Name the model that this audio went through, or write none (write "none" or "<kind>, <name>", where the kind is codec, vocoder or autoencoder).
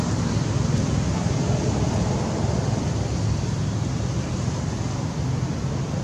none